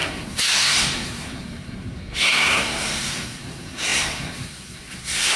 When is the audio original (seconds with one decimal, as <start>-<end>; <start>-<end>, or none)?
none